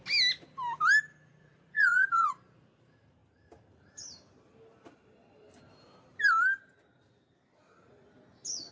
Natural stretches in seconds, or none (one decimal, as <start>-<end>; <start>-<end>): 0.0-1.4; 2.3-8.7